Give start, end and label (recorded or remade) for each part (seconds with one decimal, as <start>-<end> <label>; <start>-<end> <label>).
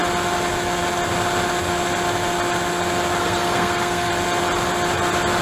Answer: 0.0-3.2 recorded; 3.2-4.1 remade; 4.1-5.4 recorded